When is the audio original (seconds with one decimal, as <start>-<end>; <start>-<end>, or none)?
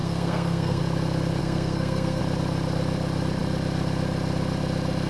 0.8-1.4; 2.2-5.1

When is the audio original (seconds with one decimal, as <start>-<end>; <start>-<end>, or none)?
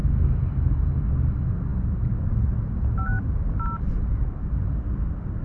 0.0-5.4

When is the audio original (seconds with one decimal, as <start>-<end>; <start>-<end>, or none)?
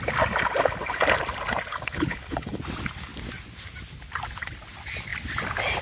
0.0-1.7; 2.6-5.8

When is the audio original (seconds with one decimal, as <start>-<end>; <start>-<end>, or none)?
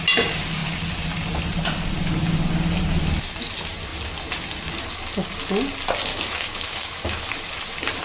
0.0-6.1; 7.5-8.0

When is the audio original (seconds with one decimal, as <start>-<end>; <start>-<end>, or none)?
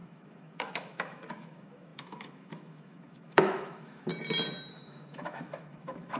4.1-4.7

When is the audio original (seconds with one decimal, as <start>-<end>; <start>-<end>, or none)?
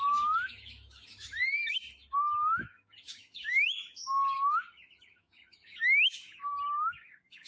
1.4-2.2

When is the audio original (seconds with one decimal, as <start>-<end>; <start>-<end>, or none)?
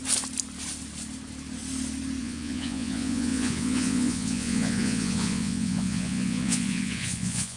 0.0-2.2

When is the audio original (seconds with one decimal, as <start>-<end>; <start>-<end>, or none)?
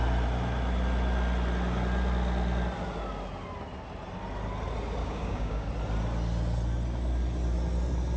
0.0-5.0; 5.7-8.2